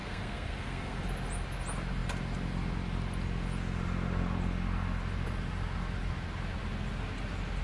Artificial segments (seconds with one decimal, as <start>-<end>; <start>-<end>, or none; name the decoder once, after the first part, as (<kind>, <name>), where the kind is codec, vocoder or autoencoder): 0.0-1.0 (codec, SNAC)